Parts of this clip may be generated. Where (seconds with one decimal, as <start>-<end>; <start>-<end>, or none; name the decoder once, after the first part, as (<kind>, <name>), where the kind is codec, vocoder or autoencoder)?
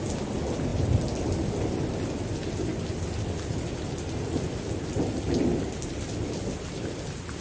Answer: none